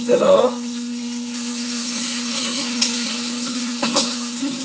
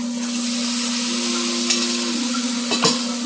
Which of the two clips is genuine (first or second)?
second